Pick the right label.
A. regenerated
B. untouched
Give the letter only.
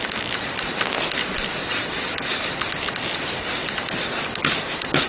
B